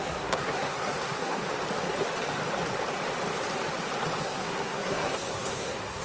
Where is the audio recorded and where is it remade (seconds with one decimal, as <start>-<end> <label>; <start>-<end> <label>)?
0.0-1.4 remade; 1.4-4.2 recorded; 4.2-6.0 remade